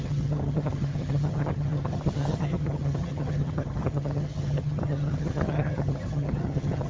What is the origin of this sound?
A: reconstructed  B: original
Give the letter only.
A